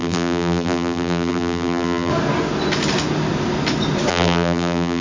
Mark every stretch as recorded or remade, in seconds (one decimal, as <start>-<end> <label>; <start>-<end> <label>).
0.0-2.1 remade; 2.1-4.1 recorded; 4.1-5.0 remade